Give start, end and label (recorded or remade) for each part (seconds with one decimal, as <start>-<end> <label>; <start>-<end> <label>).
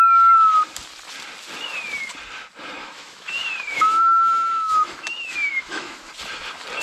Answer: 0.0-2.8 recorded; 2.8-6.1 remade; 6.1-6.8 recorded